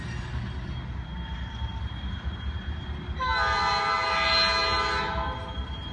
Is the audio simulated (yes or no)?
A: no